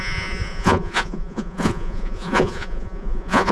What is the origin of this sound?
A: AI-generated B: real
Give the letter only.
A